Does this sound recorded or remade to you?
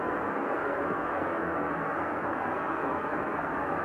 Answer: remade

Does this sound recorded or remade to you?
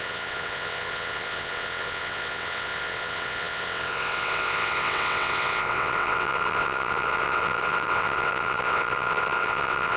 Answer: remade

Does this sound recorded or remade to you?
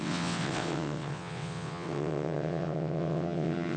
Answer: remade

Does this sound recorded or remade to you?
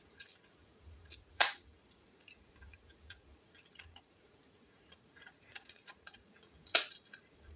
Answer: remade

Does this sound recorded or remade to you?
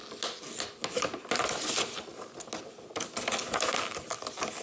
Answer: recorded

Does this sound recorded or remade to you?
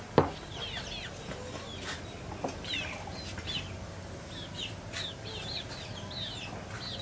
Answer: recorded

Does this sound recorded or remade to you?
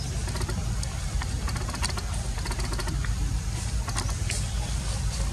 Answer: recorded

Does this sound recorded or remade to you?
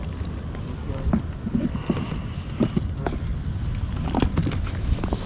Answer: recorded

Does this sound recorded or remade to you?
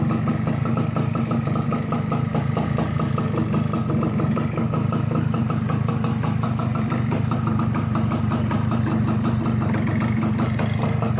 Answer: recorded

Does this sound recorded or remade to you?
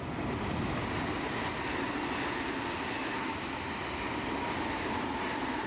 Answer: recorded